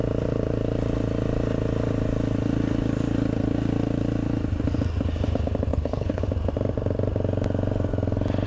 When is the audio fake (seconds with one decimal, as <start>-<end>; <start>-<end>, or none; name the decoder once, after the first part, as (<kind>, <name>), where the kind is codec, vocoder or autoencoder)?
5.7-6.2 (codec, HILCodec)